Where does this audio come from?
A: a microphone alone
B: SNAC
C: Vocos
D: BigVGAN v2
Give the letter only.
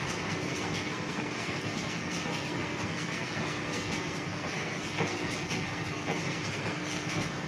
B